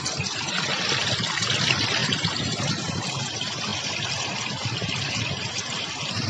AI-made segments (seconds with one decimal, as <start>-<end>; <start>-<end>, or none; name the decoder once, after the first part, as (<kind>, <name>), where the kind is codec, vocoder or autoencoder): 2.0-2.7 (vocoder, BigVGAN v2); 3.7-6.3